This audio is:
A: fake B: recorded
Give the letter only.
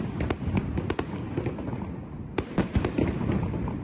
B